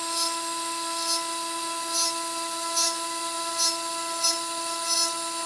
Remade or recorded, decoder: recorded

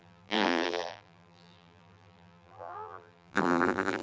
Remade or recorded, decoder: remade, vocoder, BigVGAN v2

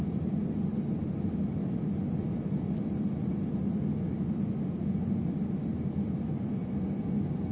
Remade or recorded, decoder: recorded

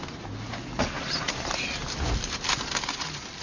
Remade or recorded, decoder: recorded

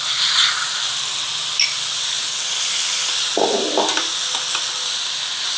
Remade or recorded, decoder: recorded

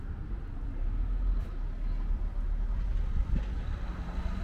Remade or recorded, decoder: recorded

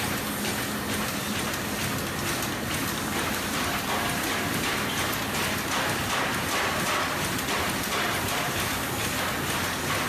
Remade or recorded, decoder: recorded